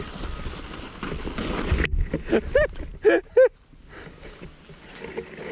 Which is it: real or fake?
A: real